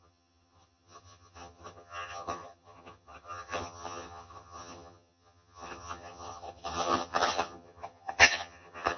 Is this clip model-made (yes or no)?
yes